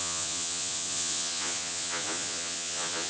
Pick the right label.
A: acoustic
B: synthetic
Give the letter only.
B